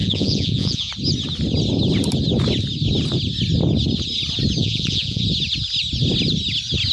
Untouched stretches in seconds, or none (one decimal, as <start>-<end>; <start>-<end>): 0.9-4.6; 5.2-6.9